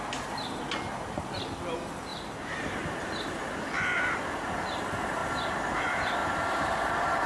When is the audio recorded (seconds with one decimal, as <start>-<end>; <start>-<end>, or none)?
0.0-2.1; 3.0-6.2